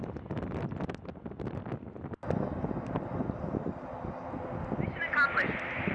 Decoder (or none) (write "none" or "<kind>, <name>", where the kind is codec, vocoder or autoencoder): none